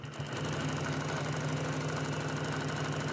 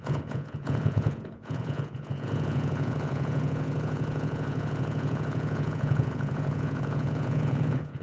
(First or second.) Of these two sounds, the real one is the first